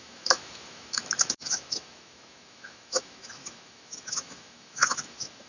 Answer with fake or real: fake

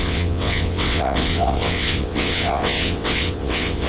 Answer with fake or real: fake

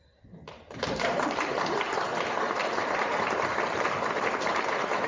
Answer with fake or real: fake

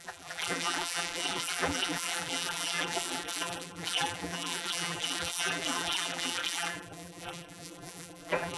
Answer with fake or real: fake